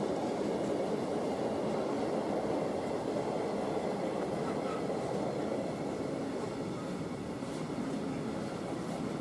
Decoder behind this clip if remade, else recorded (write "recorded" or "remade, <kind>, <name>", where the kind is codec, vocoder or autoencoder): recorded